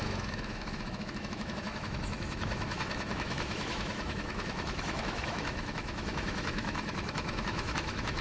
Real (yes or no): no